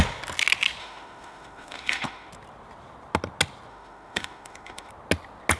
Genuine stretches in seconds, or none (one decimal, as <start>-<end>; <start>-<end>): 0.0-0.8; 2.3-3.7; 4.9-5.6